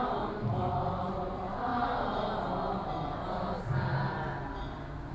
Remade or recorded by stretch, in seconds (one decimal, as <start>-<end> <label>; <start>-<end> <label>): 0.0-1.7 remade; 1.7-5.1 recorded